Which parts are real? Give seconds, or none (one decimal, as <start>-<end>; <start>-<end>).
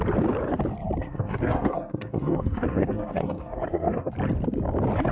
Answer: 0.0-1.0; 4.1-5.1